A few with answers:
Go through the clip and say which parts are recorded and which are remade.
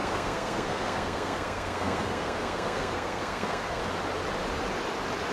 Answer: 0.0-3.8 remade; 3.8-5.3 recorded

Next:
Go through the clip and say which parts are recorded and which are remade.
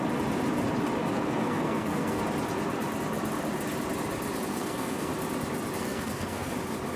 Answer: 0.0-1.1 recorded; 1.1-2.2 remade; 2.2-4.5 recorded; 4.5-5.1 remade; 5.1-5.8 recorded; 5.8-6.5 remade; 6.5-7.0 recorded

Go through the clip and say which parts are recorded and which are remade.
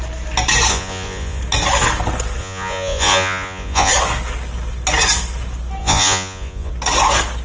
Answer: 0.0-0.7 recorded; 0.7-1.4 remade; 1.4-2.4 recorded; 2.4-3.9 remade; 3.9-5.8 recorded; 5.8-6.7 remade; 6.7-7.4 recorded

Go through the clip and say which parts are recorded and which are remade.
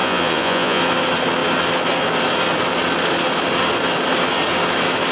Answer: 0.0-0.8 remade; 0.8-5.1 recorded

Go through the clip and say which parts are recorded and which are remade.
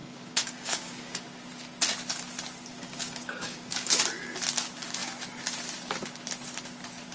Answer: 0.0-1.5 remade; 1.5-2.7 recorded; 2.7-4.0 remade; 4.0-7.1 recorded